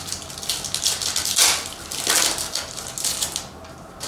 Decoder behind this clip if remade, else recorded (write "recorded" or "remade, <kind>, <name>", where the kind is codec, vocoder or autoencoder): recorded